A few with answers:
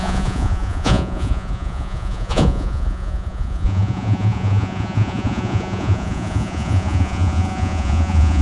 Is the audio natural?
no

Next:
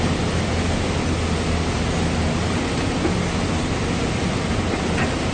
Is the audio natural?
yes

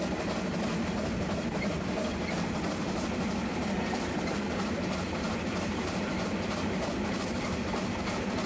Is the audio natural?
yes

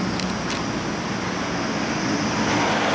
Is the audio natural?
yes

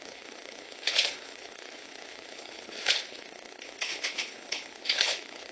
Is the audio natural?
no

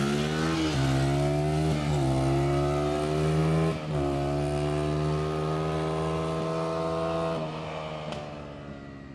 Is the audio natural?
yes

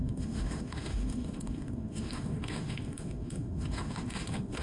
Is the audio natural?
no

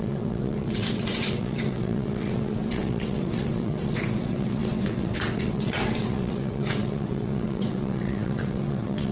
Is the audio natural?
no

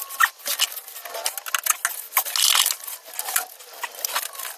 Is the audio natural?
yes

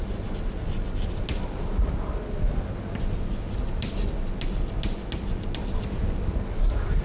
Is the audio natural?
yes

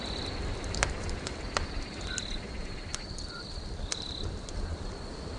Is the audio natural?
no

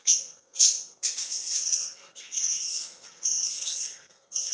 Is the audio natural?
no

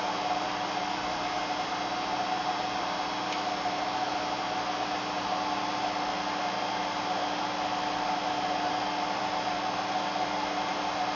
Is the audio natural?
yes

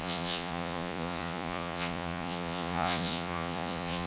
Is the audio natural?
no